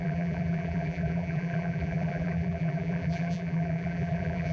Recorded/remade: remade